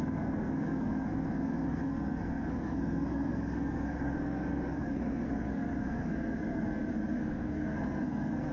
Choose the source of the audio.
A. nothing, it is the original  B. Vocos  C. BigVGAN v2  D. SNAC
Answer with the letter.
D